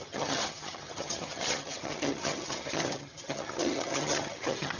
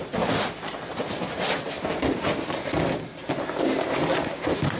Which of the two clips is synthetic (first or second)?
first